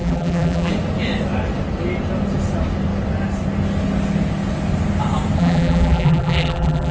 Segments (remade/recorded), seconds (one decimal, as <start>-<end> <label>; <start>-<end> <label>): 0.0-0.7 remade; 0.7-5.4 recorded; 5.4-6.9 remade